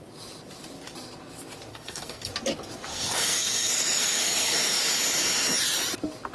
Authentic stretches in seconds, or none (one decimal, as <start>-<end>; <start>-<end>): 0.0-1.7; 2.3-2.9; 4.8-6.3